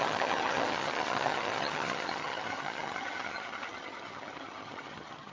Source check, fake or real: fake